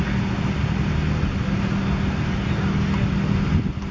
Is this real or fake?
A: real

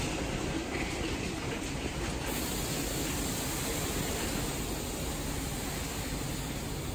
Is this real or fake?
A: real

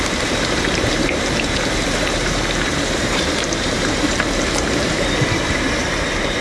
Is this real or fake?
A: fake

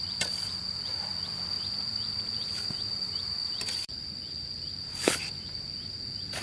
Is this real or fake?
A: fake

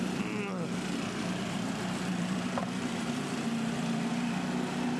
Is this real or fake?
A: fake